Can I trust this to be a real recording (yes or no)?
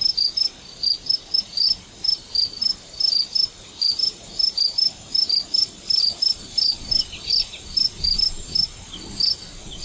yes